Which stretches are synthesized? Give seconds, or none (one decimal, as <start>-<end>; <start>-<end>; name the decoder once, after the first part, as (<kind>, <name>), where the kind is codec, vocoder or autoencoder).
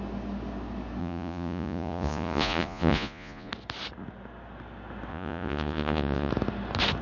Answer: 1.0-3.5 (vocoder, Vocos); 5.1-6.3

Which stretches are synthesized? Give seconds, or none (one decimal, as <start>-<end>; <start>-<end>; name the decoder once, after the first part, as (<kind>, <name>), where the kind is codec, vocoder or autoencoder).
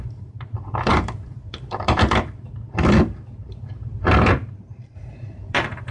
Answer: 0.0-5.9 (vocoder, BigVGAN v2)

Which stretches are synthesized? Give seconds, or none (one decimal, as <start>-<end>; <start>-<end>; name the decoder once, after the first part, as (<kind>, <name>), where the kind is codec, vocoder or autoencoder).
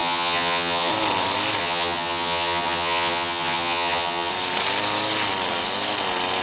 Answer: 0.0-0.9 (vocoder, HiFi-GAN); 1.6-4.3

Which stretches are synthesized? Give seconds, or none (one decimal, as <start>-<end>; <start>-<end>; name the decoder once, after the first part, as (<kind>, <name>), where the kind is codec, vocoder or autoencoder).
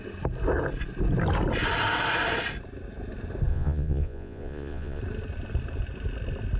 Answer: 3.5-5.0 (vocoder, Vocos)